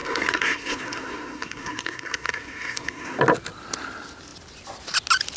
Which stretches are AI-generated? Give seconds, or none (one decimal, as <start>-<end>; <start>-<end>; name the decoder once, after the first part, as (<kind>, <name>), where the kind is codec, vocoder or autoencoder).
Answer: 0.0-3.2 (codec, SNAC)